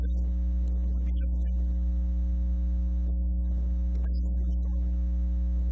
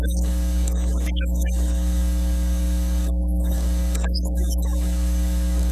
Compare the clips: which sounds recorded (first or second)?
first